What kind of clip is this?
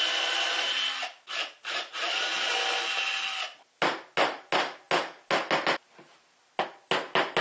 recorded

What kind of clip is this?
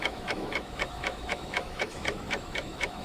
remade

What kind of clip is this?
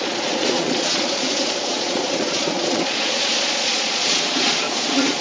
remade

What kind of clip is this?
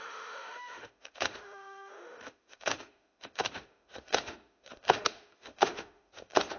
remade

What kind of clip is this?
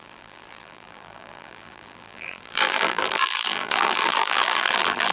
remade